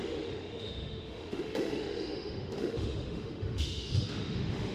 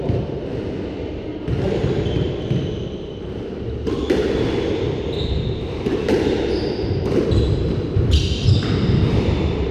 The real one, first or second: second